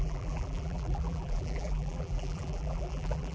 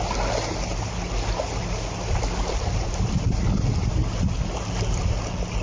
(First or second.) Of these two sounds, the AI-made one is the first